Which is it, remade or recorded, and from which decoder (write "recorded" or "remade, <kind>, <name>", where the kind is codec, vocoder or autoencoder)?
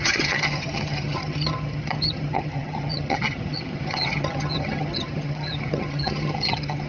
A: remade, vocoder, HiFi-GAN